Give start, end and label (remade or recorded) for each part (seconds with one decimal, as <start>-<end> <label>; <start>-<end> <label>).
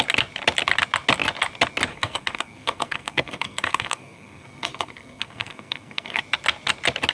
0.0-1.9 recorded; 1.9-6.2 remade; 6.2-7.1 recorded